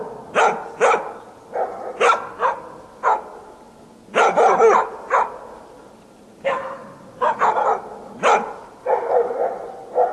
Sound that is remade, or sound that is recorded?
recorded